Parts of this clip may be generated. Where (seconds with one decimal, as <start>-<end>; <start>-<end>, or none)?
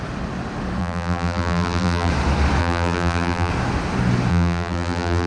0.8-2.1; 2.6-3.5; 4.3-5.3